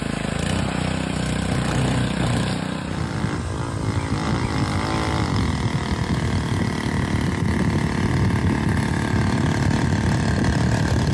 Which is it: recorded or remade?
remade